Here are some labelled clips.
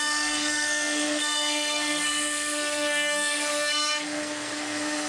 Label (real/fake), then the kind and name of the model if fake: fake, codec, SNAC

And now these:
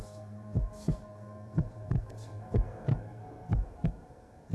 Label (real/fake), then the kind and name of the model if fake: fake, codec, SNAC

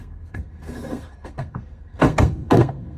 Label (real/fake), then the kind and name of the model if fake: fake, codec, SNAC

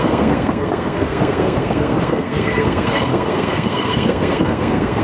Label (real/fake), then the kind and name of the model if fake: fake, codec, SNAC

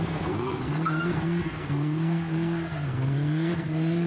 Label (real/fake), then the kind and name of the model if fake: fake, codec, SNAC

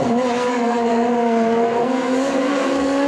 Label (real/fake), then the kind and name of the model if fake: fake, codec, SNAC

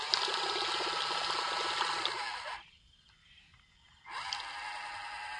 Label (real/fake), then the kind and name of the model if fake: real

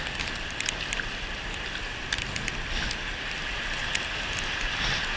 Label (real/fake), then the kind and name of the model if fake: real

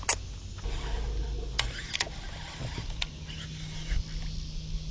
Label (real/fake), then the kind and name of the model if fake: real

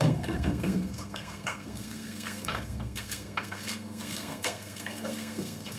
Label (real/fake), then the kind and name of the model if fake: fake, codec, SNAC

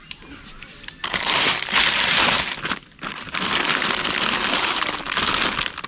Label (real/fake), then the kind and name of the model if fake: real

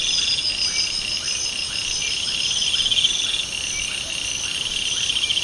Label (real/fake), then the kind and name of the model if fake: real